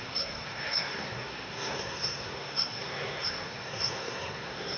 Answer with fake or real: fake